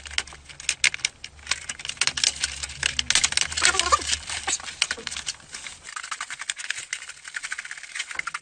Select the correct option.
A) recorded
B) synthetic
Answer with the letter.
A